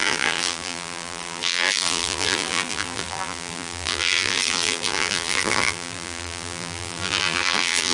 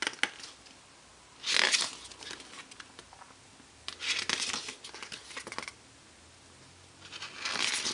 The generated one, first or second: first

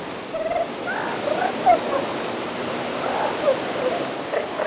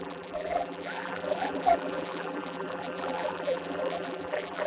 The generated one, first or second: second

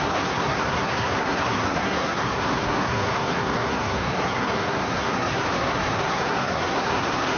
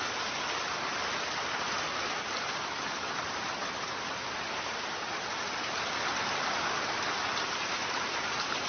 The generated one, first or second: first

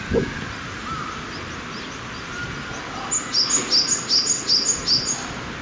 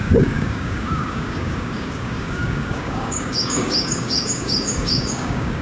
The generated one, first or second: second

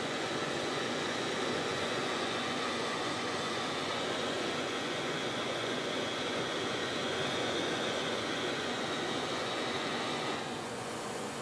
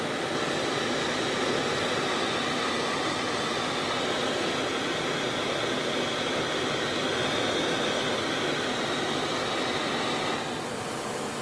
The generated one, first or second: first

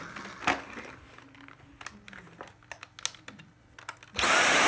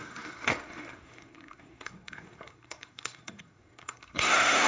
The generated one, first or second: second